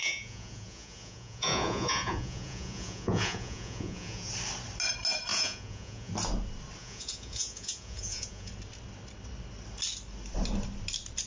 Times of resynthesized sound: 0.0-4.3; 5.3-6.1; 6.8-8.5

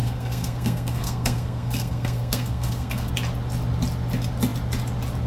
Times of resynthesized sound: 0.0-3.1